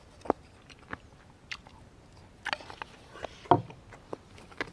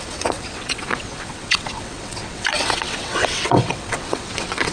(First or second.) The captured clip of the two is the first